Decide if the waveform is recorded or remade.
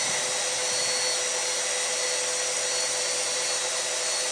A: recorded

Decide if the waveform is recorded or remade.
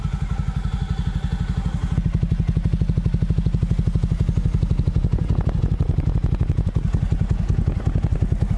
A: recorded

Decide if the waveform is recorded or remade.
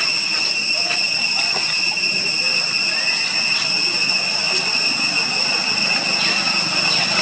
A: recorded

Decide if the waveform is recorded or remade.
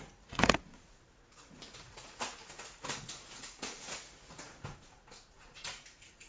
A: remade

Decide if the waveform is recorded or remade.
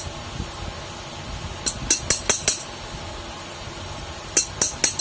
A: recorded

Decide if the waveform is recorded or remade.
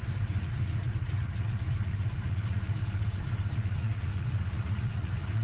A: remade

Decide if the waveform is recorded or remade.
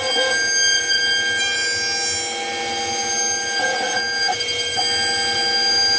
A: recorded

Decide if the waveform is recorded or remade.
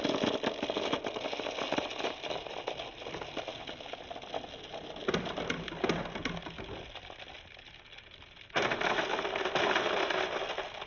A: recorded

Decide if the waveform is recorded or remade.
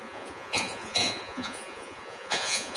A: remade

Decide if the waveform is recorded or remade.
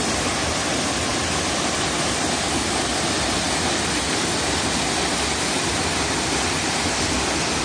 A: recorded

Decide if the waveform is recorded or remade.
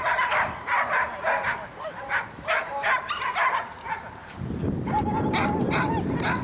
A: recorded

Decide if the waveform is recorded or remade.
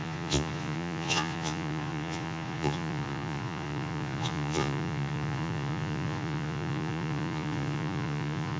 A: remade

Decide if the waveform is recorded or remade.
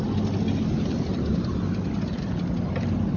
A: recorded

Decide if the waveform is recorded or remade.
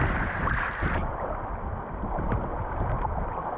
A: recorded